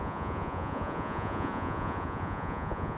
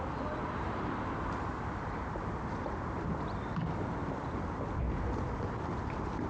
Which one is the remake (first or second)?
first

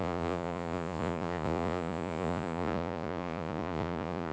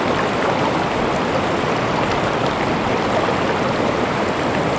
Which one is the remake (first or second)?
first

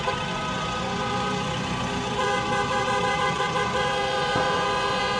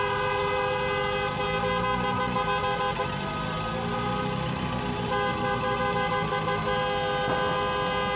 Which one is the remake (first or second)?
first